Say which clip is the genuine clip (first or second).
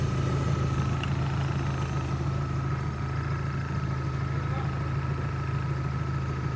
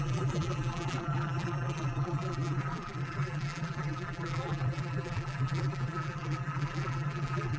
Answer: first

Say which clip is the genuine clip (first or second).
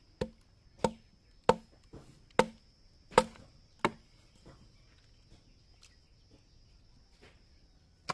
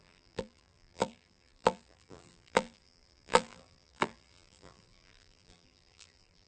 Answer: first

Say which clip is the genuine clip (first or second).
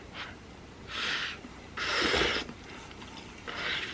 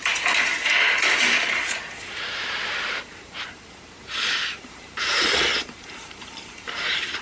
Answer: first